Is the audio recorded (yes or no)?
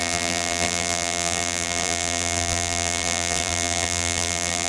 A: no